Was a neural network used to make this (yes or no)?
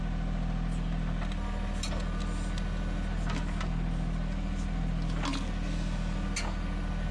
no